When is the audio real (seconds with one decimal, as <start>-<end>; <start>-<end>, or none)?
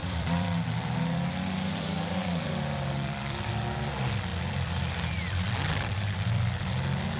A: 3.5-4.3; 6.7-7.2